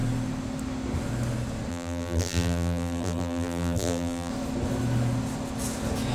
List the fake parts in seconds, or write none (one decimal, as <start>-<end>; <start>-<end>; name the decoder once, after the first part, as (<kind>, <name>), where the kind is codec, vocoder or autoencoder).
1.7-4.3 (vocoder, BigVGAN v2)